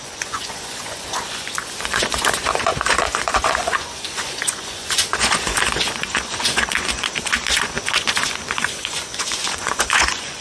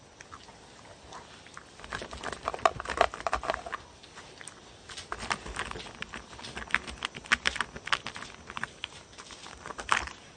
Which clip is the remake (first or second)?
first